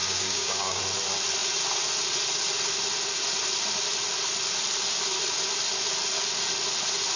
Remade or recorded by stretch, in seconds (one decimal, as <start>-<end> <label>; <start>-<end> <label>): 0.0-0.8 remade; 0.8-7.2 recorded